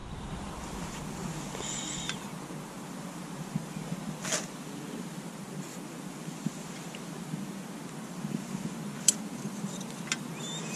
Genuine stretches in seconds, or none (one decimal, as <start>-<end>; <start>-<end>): 0.0-10.8